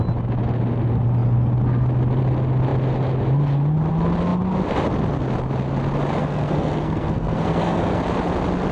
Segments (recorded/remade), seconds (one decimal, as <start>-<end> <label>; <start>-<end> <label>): 0.0-6.2 recorded; 6.2-8.0 remade; 8.0-8.7 recorded